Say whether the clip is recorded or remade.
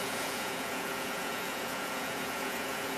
remade